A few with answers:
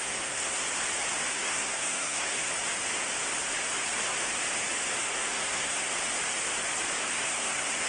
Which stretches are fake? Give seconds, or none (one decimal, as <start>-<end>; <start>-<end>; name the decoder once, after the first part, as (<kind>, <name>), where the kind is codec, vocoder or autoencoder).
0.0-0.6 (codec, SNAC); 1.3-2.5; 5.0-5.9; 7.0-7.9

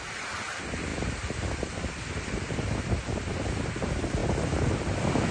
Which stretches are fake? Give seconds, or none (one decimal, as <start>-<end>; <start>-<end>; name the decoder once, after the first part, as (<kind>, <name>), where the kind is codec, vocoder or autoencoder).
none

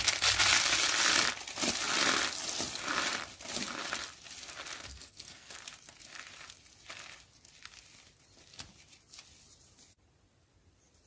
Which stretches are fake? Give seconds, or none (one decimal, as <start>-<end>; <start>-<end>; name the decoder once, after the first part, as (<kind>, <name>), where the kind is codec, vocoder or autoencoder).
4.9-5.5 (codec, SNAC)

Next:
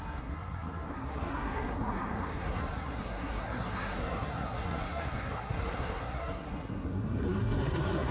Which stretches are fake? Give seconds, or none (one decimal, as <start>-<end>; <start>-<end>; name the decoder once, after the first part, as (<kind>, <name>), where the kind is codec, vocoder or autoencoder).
0.0-8.1 (codec, SNAC)

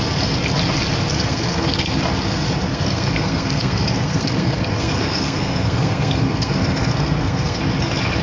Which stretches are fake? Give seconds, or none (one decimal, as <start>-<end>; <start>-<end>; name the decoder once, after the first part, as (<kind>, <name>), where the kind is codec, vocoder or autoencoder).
1.1-2.0 (codec, SNAC); 2.7-7.6

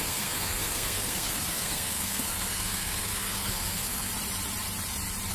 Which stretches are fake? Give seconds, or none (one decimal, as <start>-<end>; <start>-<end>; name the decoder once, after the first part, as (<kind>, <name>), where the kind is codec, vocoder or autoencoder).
0.0-4.1 (codec, SNAC)